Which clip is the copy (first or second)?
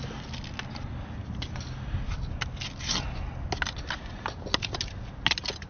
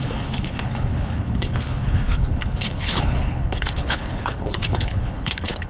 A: second